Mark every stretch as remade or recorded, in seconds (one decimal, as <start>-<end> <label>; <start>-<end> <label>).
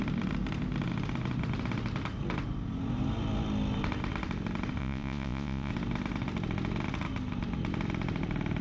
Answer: 0.0-4.8 recorded; 4.8-5.7 remade; 5.7-8.6 recorded